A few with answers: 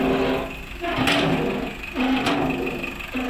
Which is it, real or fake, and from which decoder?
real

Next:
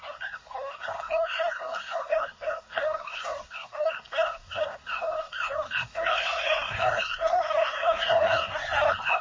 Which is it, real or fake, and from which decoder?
fake, codec, SNAC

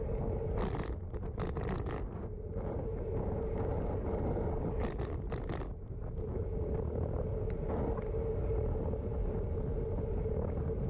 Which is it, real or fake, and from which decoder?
real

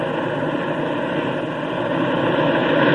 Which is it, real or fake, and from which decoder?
real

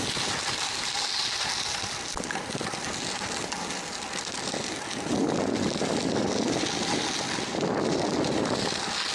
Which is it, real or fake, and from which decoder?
real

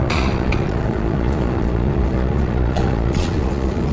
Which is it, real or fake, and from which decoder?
fake, vocoder, Vocos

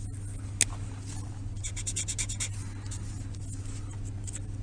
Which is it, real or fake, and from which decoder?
real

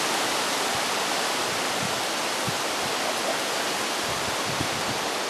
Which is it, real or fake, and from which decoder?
real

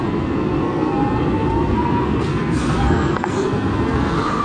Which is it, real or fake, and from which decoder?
fake, codec, SNAC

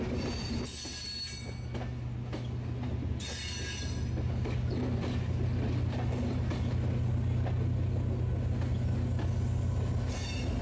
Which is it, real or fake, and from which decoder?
real